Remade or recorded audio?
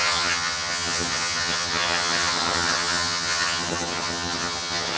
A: remade